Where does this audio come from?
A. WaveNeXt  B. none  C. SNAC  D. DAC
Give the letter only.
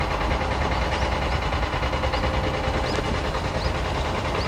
B